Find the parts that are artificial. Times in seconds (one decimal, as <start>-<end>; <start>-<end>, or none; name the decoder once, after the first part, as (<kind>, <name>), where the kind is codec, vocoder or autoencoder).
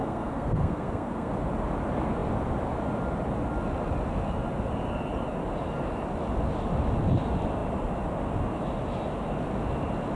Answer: 0.0-1.3 (codec, SNAC)